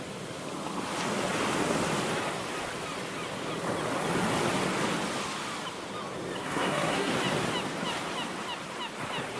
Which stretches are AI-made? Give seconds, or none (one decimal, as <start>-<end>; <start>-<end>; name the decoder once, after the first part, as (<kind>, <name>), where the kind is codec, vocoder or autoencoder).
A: 6.4-7.1 (codec, SNAC)